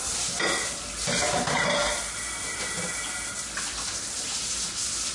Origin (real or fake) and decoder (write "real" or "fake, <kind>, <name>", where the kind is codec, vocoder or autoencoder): real